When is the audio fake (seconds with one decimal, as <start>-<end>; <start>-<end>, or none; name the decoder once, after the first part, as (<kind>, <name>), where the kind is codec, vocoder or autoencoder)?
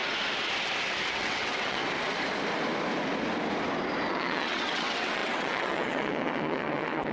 1.1-1.8 (vocoder, WaveNeXt); 4.1-7.1